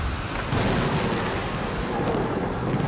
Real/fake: real